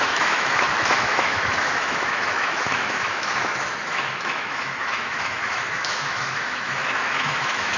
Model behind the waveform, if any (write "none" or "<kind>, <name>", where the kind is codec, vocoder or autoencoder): autoencoder, DAC-VAE